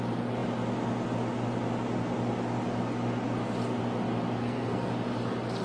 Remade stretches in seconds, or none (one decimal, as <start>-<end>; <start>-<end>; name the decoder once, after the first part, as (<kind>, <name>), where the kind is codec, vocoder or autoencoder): 4.4-4.9 (codec, SNAC)